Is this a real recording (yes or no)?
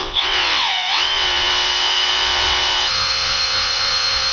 no